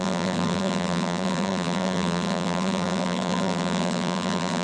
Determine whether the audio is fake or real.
fake